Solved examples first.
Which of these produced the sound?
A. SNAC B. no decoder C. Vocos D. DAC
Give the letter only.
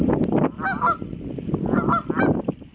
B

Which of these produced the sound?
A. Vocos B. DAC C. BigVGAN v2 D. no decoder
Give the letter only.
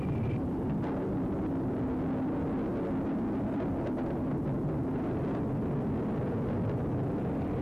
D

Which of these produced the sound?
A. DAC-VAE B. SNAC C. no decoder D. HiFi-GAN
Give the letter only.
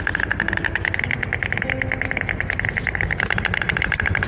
C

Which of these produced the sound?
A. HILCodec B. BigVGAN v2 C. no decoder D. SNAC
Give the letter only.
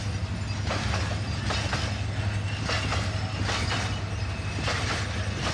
C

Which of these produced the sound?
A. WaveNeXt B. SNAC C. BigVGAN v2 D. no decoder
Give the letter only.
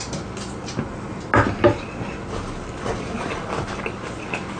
D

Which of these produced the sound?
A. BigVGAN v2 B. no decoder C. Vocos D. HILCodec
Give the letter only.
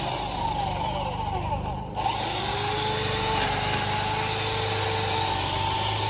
B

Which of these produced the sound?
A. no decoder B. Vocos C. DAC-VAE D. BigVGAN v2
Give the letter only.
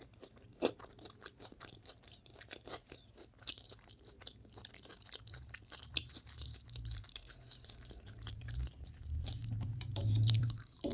D